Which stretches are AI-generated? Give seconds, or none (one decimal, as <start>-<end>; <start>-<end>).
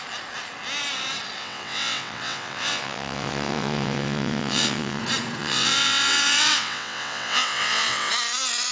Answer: 1.4-5.0; 5.4-8.1